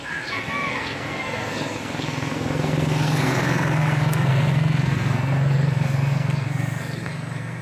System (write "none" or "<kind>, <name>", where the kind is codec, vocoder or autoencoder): codec, SNAC